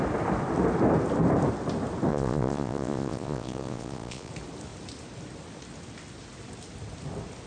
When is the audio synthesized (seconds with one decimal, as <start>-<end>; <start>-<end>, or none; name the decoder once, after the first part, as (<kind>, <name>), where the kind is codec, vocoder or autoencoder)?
2.1-4.3 (vocoder, Vocos)